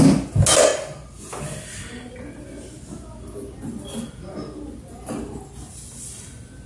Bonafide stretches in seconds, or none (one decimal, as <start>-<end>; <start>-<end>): 0.0-6.7